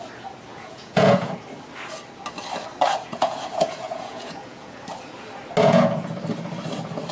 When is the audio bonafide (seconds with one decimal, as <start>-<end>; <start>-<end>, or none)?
0.0-0.5; 1.4-2.9; 4.8-5.6; 6.1-7.1